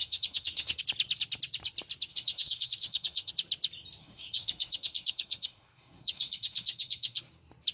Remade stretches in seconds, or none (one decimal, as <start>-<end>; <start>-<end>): 0.0-0.8; 2.1-3.3; 4.0-7.2